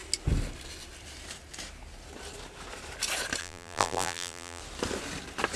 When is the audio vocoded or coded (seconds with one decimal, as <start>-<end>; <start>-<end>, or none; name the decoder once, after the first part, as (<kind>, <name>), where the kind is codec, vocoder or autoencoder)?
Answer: 3.4-4.6 (vocoder, BigVGAN v2)